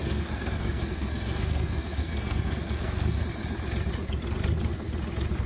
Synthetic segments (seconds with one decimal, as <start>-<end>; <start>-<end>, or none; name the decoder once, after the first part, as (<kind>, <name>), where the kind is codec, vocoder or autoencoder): 0.0-3.2 (codec, SNAC)